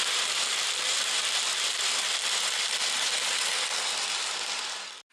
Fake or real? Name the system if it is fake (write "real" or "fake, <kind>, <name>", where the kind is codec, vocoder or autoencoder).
fake, vocoder, BigVGAN v2